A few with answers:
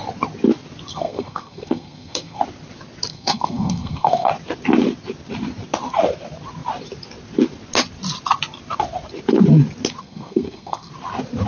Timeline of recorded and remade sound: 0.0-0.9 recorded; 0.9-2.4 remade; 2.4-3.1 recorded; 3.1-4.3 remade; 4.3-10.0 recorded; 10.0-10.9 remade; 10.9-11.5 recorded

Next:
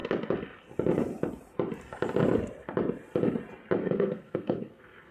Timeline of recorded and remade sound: 0.0-3.8 recorded; 3.8-5.1 remade

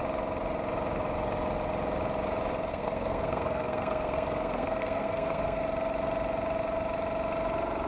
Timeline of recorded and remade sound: 0.0-2.7 recorded; 2.7-5.6 remade; 5.6-7.9 recorded

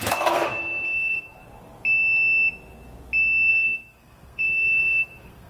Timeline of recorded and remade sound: 0.0-1.4 remade; 1.4-3.5 recorded; 3.5-5.5 remade